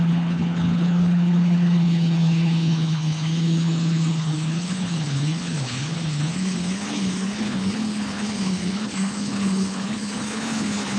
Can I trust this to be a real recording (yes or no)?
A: no